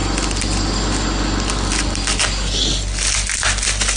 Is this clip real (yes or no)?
yes